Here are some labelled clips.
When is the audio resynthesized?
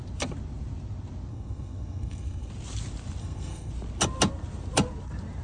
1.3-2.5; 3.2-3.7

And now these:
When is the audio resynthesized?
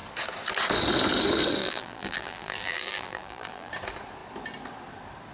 1.6-3.7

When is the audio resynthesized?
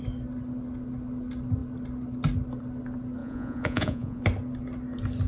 3.2-4.2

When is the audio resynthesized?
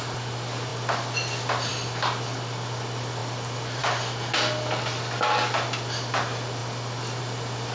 none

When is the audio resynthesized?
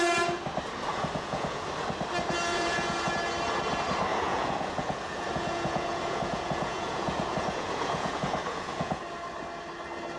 0.9-1.7; 2.5-3.1; 4.1-9.0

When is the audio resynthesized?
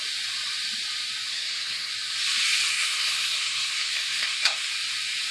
1.3-1.9; 2.7-4.7